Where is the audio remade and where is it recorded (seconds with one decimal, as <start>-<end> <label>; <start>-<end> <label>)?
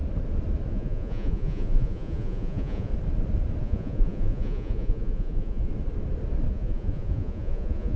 0.0-0.7 recorded; 0.7-2.9 remade; 2.9-3.6 recorded; 3.6-5.7 remade; 5.7-6.5 recorded; 6.5-8.0 remade